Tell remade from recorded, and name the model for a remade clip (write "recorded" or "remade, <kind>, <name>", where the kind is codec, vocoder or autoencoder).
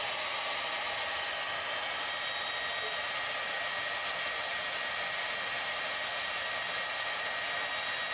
recorded